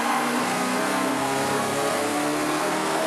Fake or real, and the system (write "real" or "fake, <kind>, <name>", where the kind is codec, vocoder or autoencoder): fake, codec, SNAC